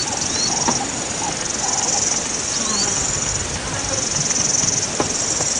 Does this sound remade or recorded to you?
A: recorded